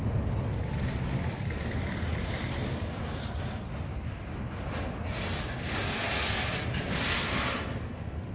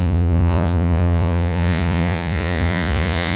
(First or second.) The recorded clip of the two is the first